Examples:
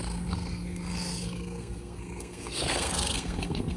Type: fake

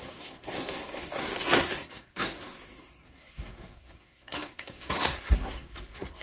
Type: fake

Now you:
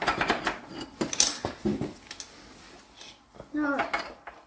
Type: real